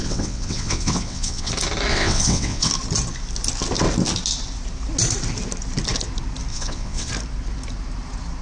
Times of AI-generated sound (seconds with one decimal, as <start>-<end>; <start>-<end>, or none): 0.0-1.5; 1.9-2.7; 6.5-7.1